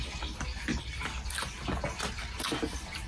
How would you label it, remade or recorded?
recorded